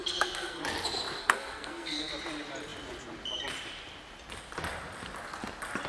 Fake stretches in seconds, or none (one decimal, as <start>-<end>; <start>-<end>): 0.0-0.6; 1.2-2.1